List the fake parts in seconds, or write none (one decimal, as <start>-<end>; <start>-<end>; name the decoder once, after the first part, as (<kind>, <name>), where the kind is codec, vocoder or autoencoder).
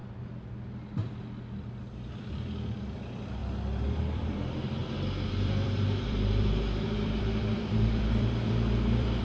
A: 2.1-3.4 (vocoder, BigVGAN v2); 4.0-4.8; 5.3-9.2